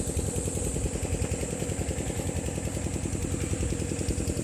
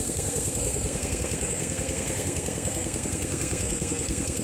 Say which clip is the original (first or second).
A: first